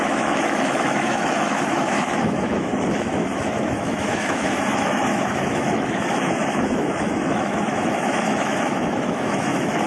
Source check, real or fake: fake